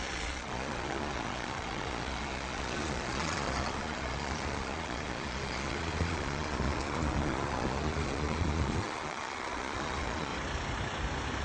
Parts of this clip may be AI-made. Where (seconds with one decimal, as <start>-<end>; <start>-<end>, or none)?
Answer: 0.0-10.3